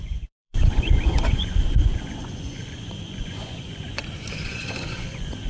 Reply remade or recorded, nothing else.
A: remade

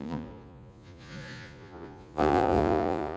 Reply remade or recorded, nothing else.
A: remade